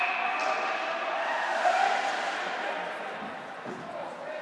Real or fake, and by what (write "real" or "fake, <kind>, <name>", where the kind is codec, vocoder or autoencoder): real